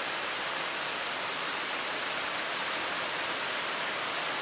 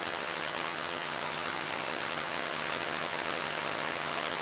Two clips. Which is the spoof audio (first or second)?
second